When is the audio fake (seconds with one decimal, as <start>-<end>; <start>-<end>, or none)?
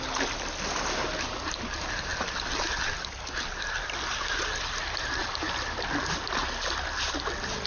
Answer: none